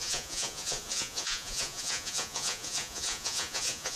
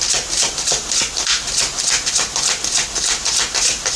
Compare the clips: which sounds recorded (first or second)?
second